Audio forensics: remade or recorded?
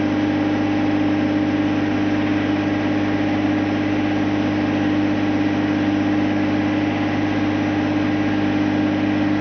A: recorded